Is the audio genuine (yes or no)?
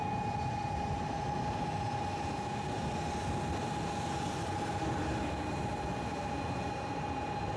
yes